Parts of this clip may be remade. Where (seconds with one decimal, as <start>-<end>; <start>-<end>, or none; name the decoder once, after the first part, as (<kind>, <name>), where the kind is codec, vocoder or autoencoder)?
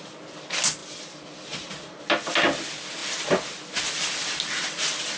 none